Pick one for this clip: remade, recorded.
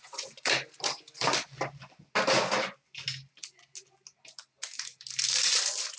recorded